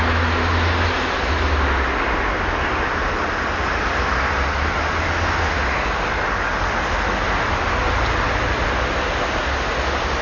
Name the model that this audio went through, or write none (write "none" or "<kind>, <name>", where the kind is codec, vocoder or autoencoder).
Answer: none